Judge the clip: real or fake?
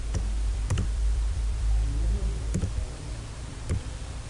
fake